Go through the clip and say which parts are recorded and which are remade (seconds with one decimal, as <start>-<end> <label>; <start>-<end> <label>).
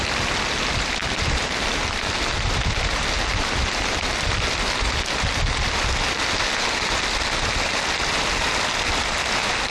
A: 0.0-9.7 recorded